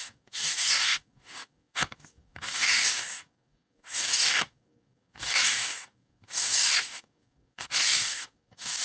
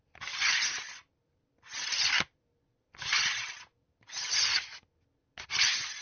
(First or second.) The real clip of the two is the second